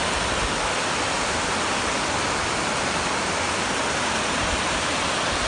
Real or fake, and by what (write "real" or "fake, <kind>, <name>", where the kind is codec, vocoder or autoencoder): real